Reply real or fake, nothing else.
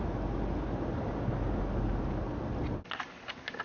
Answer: real